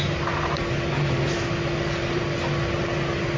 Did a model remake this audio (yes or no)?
no